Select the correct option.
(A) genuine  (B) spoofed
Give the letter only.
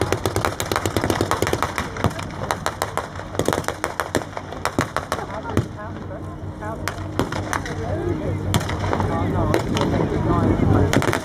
A